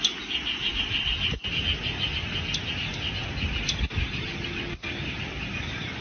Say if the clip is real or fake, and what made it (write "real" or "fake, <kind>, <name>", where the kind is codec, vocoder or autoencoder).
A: real